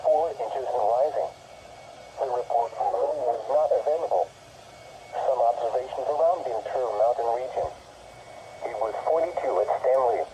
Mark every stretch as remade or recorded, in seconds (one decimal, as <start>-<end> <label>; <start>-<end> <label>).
0.0-2.6 recorded; 2.6-3.5 remade; 3.5-10.3 recorded

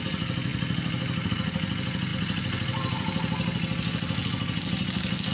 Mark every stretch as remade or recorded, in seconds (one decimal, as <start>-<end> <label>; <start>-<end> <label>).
0.0-5.3 recorded

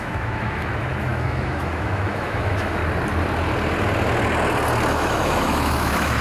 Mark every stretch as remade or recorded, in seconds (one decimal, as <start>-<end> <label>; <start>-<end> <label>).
0.0-2.8 remade; 2.8-4.9 recorded; 4.9-6.2 remade

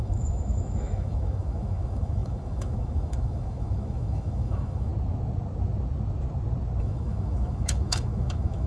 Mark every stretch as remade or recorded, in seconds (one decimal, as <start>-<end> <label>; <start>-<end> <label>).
0.0-4.9 remade; 4.9-6.8 recorded; 6.8-8.7 remade

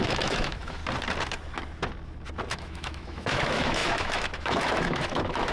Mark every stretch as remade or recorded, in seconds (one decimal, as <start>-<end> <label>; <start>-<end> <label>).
0.0-0.8 remade; 0.8-2.5 recorded; 2.5-5.5 remade